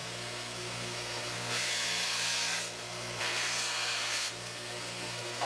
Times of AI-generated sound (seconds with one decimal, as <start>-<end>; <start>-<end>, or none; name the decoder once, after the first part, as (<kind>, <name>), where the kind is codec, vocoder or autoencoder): 0.0-5.5 (codec, SNAC)